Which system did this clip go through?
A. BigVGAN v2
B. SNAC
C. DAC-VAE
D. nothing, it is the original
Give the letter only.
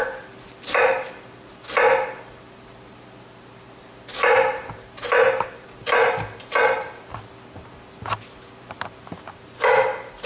D